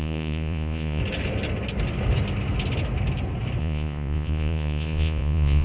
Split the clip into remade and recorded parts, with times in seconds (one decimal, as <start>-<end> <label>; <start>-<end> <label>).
0.0-1.0 remade; 1.0-3.6 recorded; 3.6-5.6 remade

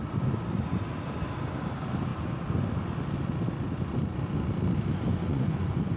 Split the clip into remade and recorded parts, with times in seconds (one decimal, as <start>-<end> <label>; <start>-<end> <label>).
0.0-5.1 recorded; 5.1-6.0 remade

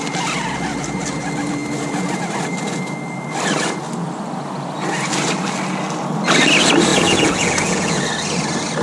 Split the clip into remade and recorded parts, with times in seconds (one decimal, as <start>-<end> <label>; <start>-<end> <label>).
0.0-6.9 recorded; 6.9-8.0 remade; 8.0-8.8 recorded

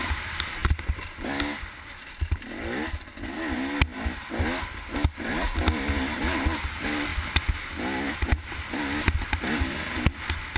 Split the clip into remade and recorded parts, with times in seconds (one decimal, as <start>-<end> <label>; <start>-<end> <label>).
0.0-10.6 recorded

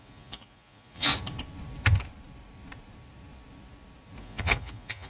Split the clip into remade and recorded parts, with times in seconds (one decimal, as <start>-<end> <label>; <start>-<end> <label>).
0.0-1.1 remade; 1.1-4.2 recorded; 4.2-5.1 remade

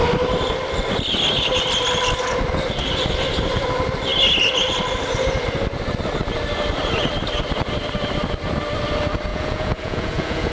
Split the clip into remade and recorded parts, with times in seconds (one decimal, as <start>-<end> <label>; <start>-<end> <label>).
0.0-9.3 recorded; 9.3-10.5 remade

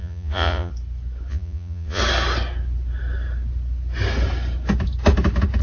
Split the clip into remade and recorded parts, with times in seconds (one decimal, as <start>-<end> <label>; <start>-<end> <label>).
0.0-0.7 remade; 0.7-1.3 recorded; 1.3-2.0 remade; 2.0-5.6 recorded